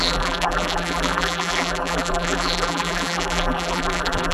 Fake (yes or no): yes